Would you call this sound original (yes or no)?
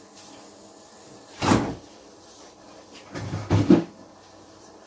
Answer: yes